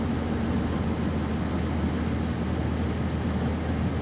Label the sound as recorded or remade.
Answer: recorded